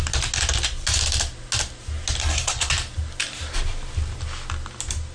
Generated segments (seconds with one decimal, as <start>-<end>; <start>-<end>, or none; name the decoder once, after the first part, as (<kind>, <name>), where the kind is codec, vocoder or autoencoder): 2.2-2.7 (codec, SNAC)